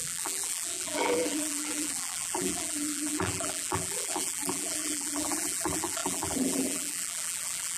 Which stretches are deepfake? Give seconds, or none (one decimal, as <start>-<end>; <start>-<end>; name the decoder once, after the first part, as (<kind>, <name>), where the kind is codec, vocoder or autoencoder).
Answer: 0.0-7.8 (vocoder, BigVGAN v2)